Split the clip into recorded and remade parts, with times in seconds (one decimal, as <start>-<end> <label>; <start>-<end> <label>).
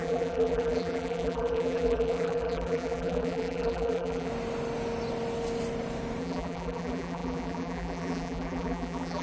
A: 0.0-4.3 remade; 4.3-6.2 recorded; 6.2-9.2 remade